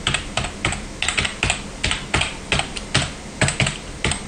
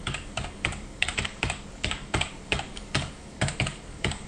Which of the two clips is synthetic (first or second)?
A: second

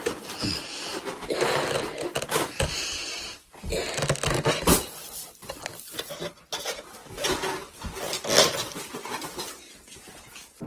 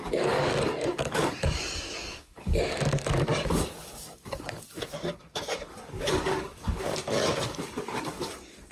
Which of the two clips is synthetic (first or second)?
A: second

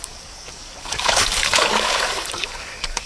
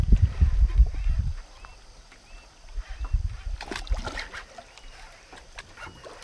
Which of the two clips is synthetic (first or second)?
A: first